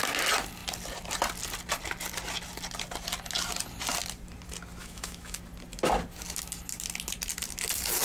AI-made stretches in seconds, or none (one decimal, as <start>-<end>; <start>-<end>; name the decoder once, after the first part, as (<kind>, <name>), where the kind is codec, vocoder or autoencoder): 4.8-5.4 (autoencoder, DAC-VAE)